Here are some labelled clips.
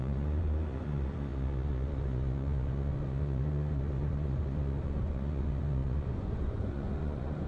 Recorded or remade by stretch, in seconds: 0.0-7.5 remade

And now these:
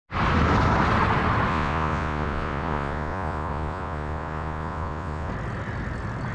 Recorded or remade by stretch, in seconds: 0.0-1.5 recorded; 1.5-5.3 remade; 5.3-6.3 recorded